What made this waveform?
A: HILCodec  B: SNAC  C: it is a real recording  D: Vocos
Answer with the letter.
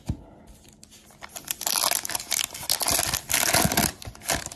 C